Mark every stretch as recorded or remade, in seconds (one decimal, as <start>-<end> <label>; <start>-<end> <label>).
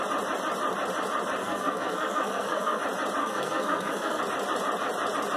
0.0-1.4 recorded; 1.4-2.8 remade; 2.8-3.2 recorded; 3.2-4.2 remade; 4.2-5.4 recorded